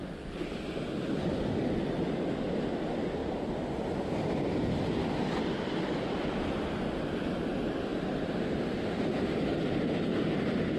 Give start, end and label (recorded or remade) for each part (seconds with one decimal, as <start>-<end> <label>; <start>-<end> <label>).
0.0-3.2 recorded; 3.2-4.8 remade; 4.8-7.9 recorded; 7.9-9.2 remade; 9.2-10.8 recorded